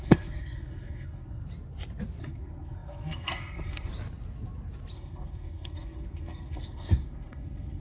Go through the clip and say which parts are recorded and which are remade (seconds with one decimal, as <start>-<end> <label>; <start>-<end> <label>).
0.0-1.4 remade; 1.4-2.2 recorded; 2.2-3.9 remade; 3.9-4.9 recorded; 4.9-7.8 remade